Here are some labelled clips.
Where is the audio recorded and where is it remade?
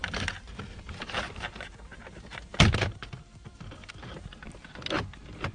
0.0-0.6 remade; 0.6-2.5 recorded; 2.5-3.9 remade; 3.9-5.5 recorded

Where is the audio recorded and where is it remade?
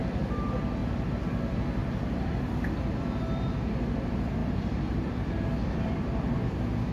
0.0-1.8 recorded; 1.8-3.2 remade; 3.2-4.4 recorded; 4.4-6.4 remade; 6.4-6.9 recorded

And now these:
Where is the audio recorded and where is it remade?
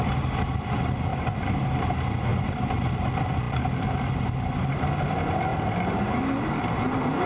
0.0-1.1 recorded; 1.1-1.7 remade; 1.7-2.3 recorded; 2.3-3.9 remade; 3.9-7.3 recorded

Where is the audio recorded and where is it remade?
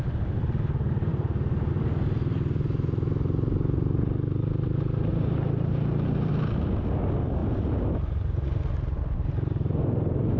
0.0-1.1 recorded; 1.1-1.7 remade; 1.7-5.1 recorded; 5.1-6.3 remade; 6.3-10.4 recorded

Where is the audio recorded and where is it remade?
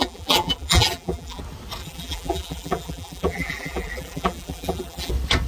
0.0-1.4 remade; 1.4-1.8 recorded; 1.8-5.1 remade; 5.1-5.5 recorded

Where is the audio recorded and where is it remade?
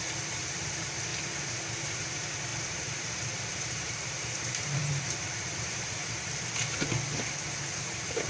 0.0-1.1 remade; 1.1-1.8 recorded; 1.8-6.0 remade; 6.0-7.6 recorded; 7.6-8.3 remade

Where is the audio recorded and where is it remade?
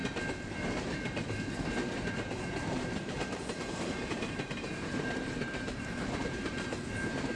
0.0-0.8 recorded; 0.8-7.4 remade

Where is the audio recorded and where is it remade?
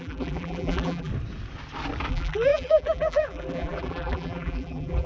0.0-1.1 remade; 1.1-2.1 recorded; 2.1-5.1 remade